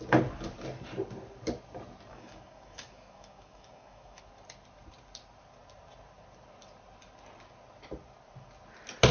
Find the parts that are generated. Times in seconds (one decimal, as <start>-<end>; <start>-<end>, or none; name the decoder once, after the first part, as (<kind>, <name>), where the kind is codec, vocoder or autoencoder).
2.1-4.2 (codec, DAC)